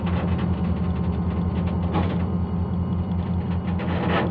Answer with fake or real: real